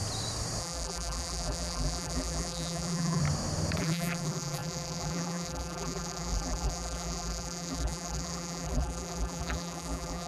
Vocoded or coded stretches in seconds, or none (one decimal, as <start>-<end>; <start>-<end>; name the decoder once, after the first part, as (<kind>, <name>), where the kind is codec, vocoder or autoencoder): 0.6-3.2 (vocoder, BigVGAN v2); 3.8-10.3